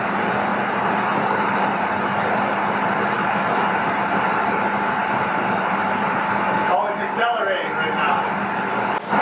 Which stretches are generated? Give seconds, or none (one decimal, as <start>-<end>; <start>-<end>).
1.1-1.7; 5.0-6.2